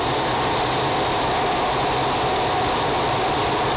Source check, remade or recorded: recorded